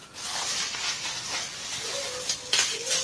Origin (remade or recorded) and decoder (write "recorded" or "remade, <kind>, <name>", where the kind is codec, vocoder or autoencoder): recorded